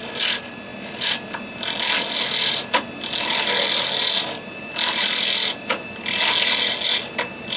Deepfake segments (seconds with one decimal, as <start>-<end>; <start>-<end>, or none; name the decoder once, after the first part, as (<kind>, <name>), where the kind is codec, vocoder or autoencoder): none